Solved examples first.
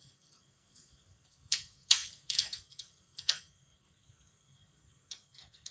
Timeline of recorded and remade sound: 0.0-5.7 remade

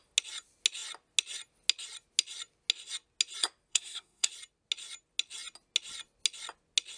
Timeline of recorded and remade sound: 0.0-3.7 recorded; 3.7-4.3 remade; 4.3-7.0 recorded

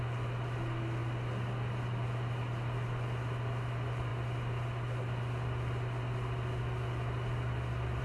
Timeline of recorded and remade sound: 0.0-8.0 recorded

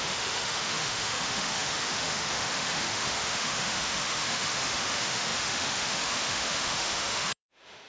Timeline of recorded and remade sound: 0.0-7.9 remade

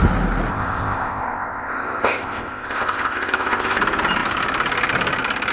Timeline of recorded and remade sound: 0.0-0.5 recorded; 0.5-3.8 remade; 3.8-5.5 recorded

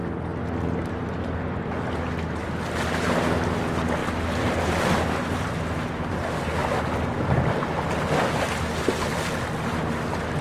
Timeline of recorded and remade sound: 0.0-10.4 recorded